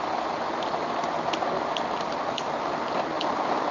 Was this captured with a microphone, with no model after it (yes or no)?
yes